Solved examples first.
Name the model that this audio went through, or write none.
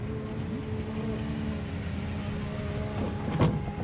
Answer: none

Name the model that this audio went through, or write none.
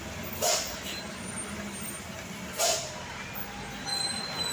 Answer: none